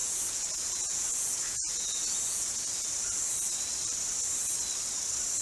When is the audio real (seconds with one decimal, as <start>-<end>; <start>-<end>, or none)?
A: 2.8-5.4